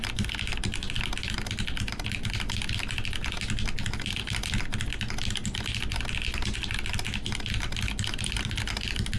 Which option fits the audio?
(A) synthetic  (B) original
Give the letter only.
B